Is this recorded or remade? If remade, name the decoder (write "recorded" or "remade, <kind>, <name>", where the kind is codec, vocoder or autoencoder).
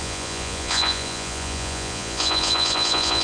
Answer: remade, vocoder, Vocos